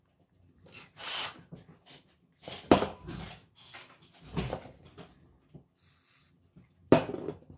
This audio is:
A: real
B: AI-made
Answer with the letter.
A